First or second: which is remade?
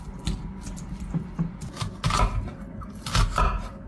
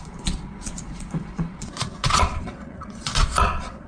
second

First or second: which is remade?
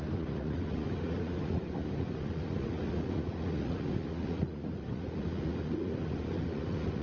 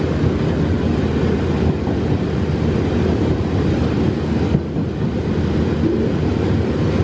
first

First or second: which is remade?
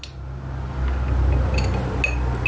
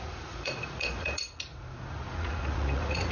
second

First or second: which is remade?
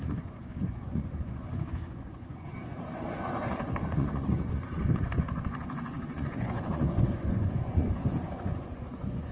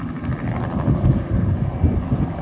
first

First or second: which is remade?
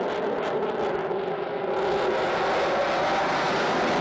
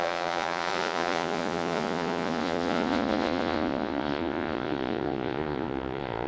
second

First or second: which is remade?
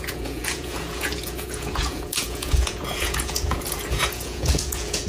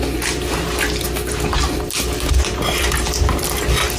first